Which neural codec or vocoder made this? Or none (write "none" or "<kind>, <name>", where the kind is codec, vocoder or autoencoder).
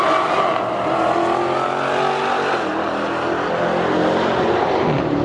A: none